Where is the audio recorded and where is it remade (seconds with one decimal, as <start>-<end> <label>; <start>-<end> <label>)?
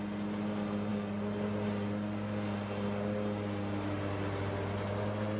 0.0-5.4 recorded